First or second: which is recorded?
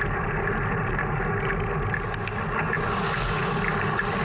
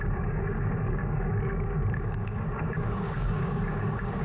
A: first